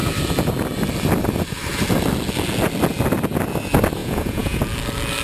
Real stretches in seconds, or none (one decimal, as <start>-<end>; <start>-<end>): 0.0-4.0; 4.6-5.2